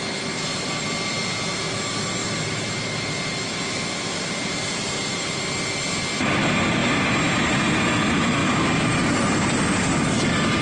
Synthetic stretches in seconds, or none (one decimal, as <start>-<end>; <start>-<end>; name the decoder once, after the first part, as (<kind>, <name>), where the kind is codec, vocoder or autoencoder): none